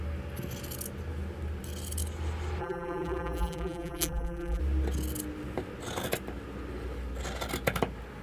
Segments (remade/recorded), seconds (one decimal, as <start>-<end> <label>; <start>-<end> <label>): 0.0-2.6 recorded; 2.6-4.6 remade; 4.6-8.2 recorded